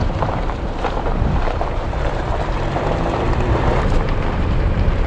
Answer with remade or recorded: remade